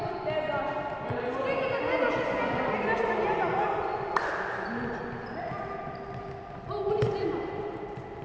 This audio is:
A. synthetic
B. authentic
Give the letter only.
B